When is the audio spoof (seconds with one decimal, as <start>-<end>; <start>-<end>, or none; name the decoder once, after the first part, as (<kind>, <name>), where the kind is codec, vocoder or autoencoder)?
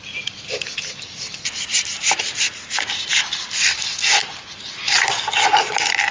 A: 1.7-3.1 (vocoder, BigVGAN v2); 4.2-6.1